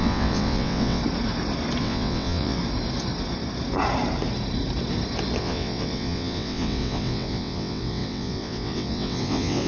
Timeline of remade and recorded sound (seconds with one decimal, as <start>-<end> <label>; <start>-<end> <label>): 0.0-1.0 remade; 1.0-1.8 recorded; 1.8-2.6 remade; 2.6-5.4 recorded; 5.4-9.7 remade